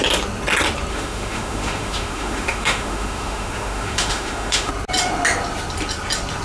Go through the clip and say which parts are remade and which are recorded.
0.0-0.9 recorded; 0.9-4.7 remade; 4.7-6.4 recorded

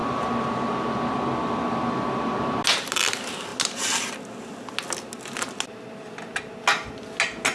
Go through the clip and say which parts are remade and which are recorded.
0.0-7.5 recorded

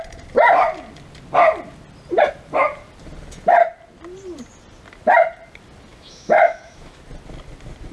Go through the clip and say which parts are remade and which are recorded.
0.0-5.9 recorded; 5.9-7.0 remade; 7.0-7.9 recorded

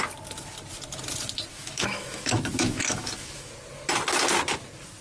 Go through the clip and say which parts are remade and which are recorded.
0.0-1.5 recorded; 1.5-3.5 remade; 3.5-5.0 recorded

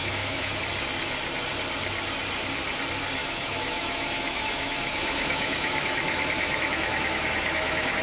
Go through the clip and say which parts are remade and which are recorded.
0.0-0.6 remade; 0.6-3.2 recorded; 3.2-8.0 remade

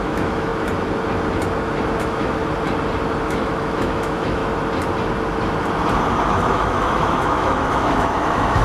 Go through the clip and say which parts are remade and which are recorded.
0.0-0.5 remade; 0.5-2.0 recorded; 2.0-2.4 remade; 2.4-3.2 recorded; 3.2-4.4 remade; 4.4-6.3 recorded; 6.3-8.6 remade

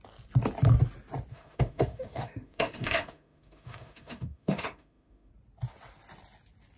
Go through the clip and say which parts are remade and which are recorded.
0.0-1.3 recorded; 1.3-5.3 remade; 5.3-6.8 recorded

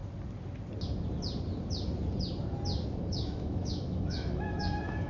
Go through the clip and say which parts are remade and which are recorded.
0.0-3.1 recorded; 3.1-5.1 remade